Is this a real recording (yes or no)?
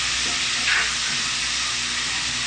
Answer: yes